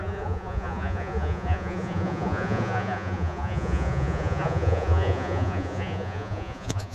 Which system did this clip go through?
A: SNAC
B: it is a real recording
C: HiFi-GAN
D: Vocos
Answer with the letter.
D